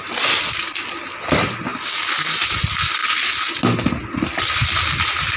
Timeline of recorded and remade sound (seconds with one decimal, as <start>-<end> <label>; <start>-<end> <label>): 0.0-5.4 recorded

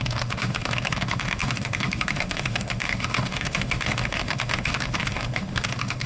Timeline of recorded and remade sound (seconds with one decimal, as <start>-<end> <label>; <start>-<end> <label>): 0.0-6.1 remade

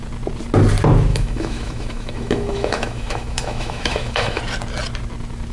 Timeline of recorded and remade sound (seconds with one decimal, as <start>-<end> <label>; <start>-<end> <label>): 0.0-1.1 recorded; 1.1-4.4 remade; 4.4-5.5 recorded

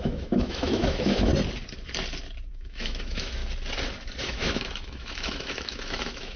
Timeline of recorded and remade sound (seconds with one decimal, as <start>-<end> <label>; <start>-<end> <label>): 0.0-1.3 remade; 1.3-2.5 recorded; 2.5-3.4 remade; 3.4-4.2 recorded; 4.2-6.4 remade